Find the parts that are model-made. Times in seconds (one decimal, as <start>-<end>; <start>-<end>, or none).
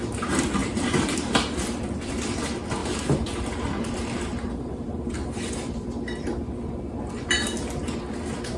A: 0.6-2.1; 2.8-5.7